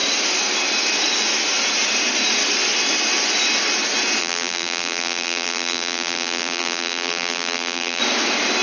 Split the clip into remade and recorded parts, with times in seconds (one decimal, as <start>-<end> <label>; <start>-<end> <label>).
0.0-4.2 recorded; 4.2-8.0 remade; 8.0-8.6 recorded